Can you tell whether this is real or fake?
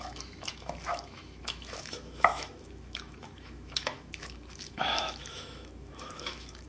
fake